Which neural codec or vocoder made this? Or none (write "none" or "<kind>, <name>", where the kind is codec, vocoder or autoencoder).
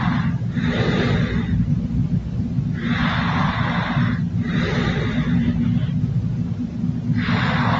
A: none